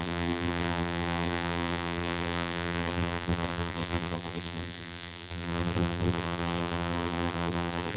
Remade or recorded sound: remade